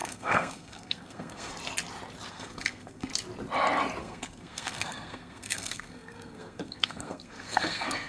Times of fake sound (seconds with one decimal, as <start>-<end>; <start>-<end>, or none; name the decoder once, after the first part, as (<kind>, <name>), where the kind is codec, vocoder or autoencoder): 0.0-1.5 (codec, SNAC); 2.3-3.1; 4.0-8.1